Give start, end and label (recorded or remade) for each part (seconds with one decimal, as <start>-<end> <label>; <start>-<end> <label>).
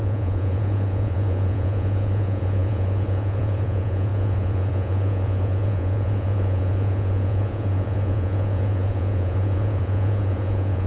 0.0-10.9 remade